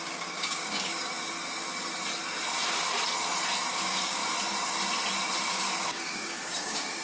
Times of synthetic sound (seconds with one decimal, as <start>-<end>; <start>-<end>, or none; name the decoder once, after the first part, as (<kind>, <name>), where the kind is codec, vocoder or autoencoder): 0.0-1.1 (codec, DAC); 3.7-4.2; 5.5-7.0